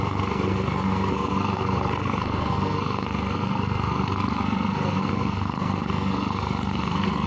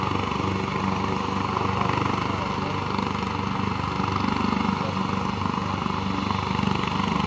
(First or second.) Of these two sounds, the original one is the second